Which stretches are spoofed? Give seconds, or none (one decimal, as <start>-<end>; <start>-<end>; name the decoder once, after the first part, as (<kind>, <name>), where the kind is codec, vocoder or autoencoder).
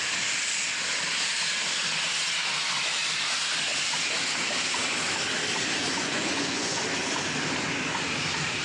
5.8-6.8 (vocoder, Vocos)